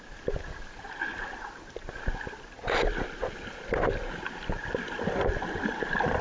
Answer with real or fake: real